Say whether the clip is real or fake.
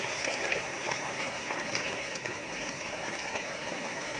fake